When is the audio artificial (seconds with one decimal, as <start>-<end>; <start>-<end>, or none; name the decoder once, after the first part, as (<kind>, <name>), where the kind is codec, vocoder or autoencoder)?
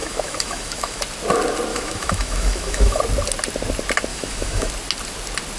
0.0-1.0 (autoencoder, DAC-VAE); 1.7-3.0; 4.1-4.7